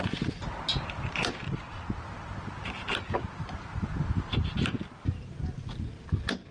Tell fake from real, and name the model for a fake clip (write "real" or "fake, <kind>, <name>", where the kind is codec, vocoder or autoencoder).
real